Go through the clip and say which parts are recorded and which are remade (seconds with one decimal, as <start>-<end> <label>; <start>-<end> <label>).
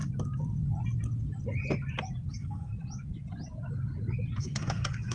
0.0-2.3 recorded; 2.3-2.7 remade; 2.7-4.4 recorded; 4.4-5.1 remade